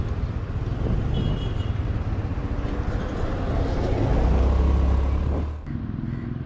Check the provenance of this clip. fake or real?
real